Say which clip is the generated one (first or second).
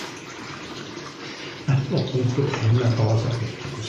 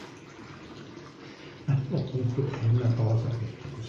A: first